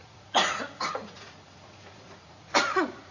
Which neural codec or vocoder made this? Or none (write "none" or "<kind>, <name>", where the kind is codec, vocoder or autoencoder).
vocoder, Vocos